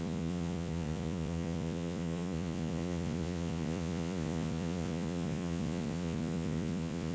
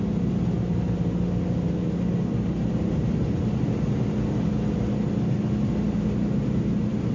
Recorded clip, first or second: second